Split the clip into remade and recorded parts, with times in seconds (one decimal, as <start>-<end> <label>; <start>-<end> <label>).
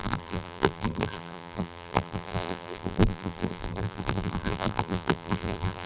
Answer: 0.0-5.9 remade